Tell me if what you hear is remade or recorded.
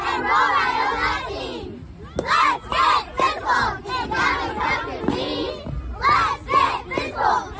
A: recorded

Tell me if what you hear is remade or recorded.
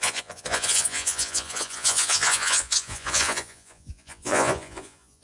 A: remade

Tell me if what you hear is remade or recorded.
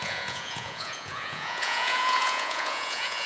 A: remade